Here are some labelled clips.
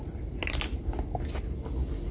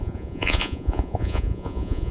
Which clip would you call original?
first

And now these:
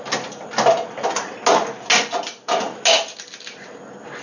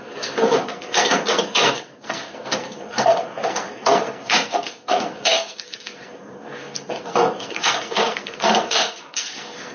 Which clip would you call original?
first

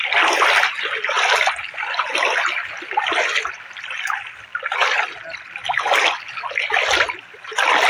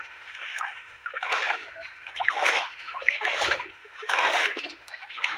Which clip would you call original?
first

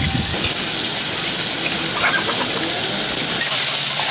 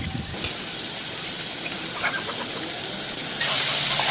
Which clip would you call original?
first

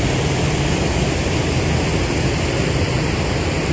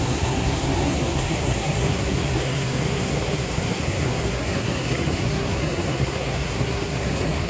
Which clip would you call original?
first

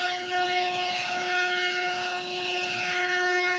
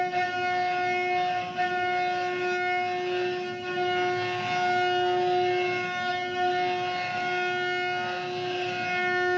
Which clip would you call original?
second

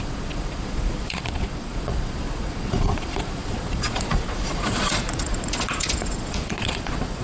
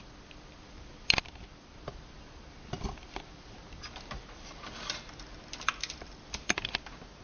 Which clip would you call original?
second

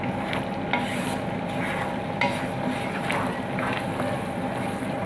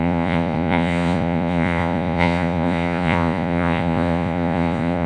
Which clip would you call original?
first